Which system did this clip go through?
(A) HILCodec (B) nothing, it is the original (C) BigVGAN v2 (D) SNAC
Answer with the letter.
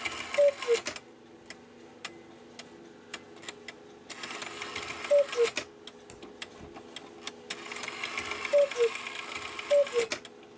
B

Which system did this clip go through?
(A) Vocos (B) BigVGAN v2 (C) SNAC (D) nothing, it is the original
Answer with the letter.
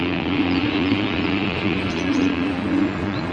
A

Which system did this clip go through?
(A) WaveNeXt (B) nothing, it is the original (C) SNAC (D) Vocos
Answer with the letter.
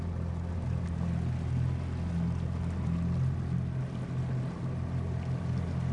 B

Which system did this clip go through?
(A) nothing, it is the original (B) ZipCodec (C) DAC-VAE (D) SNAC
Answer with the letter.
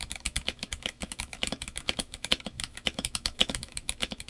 C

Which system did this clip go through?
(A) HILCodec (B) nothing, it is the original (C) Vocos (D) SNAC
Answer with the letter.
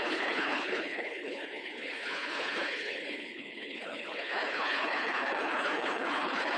A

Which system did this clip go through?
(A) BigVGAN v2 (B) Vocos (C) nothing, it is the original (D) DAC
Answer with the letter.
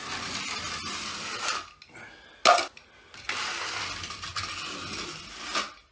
C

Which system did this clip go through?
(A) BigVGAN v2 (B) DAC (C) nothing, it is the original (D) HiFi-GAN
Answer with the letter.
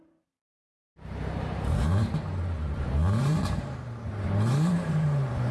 A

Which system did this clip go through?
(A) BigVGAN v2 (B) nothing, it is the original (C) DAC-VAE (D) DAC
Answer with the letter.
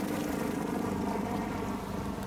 B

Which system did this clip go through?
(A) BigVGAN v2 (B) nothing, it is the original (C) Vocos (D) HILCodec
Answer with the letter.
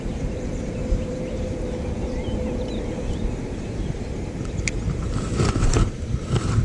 A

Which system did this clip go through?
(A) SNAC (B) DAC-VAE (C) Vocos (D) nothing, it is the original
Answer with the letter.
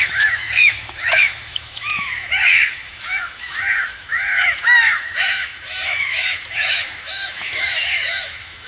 B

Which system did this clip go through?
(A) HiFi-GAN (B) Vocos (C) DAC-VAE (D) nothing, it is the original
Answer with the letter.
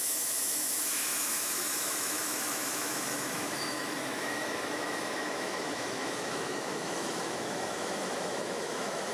C